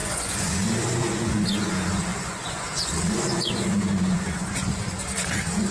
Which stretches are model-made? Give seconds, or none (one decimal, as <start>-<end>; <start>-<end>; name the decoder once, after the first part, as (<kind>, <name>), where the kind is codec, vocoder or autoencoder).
0.0-5.7 (vocoder, Vocos)